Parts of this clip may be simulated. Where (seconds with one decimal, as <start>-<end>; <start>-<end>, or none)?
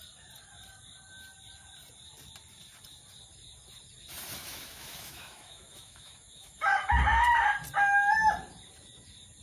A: 4.4-6.7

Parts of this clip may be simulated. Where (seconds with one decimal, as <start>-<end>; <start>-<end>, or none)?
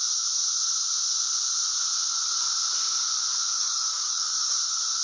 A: 3.5-4.6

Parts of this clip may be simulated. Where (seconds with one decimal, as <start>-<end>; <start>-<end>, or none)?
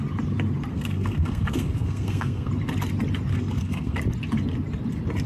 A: 0.7-2.5; 3.3-4.0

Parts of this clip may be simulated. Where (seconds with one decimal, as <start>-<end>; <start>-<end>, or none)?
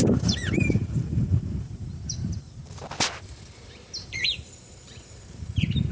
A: 0.0-2.6; 4.0-5.9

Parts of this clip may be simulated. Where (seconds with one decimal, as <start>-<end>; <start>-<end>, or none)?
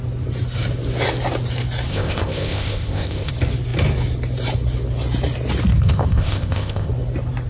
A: 1.9-3.3; 5.8-6.9